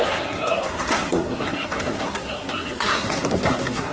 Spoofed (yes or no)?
yes